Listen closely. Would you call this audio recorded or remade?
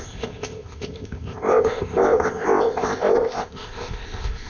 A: remade